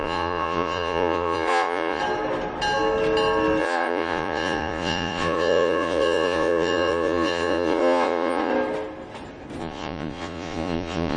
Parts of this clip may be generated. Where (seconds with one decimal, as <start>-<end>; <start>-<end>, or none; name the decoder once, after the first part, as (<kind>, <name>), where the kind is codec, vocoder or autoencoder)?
0.0-2.0 (vocoder, Vocos); 3.6-8.5; 9.6-11.2